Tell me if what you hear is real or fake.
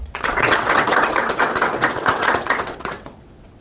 fake